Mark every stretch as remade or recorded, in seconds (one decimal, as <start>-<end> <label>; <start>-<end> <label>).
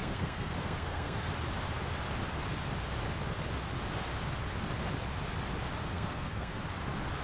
0.0-1.3 remade; 1.3-5.8 recorded; 5.8-6.6 remade; 6.6-7.2 recorded